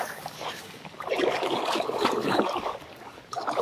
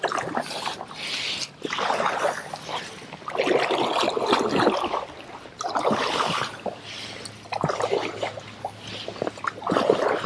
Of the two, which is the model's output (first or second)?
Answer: first